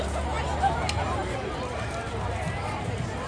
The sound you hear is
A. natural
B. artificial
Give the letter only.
A